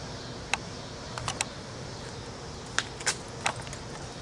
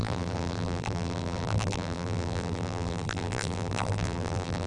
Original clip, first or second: first